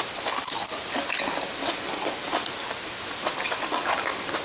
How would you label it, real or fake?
real